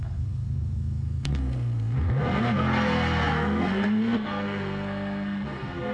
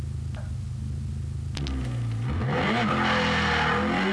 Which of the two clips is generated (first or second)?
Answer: first